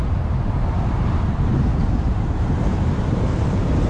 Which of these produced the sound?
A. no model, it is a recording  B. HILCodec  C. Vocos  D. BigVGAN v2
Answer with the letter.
D